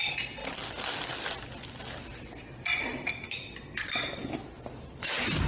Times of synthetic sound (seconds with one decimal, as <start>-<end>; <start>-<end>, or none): none